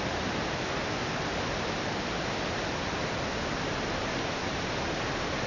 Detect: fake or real real